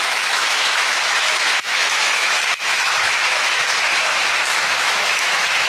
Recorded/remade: remade